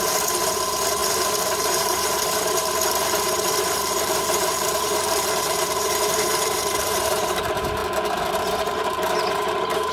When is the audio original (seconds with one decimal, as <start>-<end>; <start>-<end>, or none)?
7.8-8.3